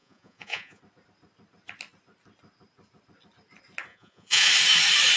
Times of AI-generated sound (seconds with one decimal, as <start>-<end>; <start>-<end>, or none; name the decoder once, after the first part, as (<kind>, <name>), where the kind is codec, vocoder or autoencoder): 0.0-0.8 (vocoder, Vocos); 3.9-4.5